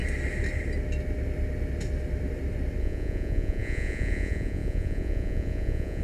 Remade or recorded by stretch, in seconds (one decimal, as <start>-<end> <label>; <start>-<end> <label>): 0.0-2.8 recorded; 2.8-6.0 remade